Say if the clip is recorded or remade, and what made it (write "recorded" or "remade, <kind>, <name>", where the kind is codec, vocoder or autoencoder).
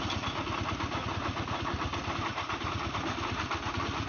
recorded